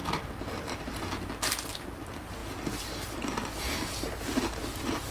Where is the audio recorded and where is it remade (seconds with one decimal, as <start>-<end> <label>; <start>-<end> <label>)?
0.0-5.1 recorded